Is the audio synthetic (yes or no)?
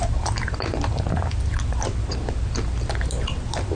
no